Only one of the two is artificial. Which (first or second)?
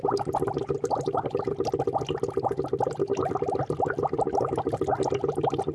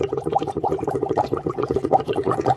second